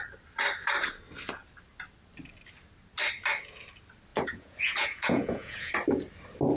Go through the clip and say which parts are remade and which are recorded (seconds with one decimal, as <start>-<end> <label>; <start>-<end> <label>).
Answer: 0.0-4.1 recorded; 4.1-5.7 remade; 5.7-6.6 recorded